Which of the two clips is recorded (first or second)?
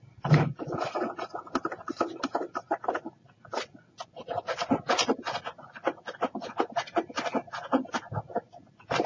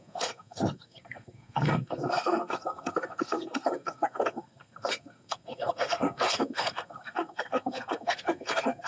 first